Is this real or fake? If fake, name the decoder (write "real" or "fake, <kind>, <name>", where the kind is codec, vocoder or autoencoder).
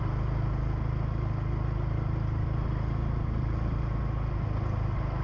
real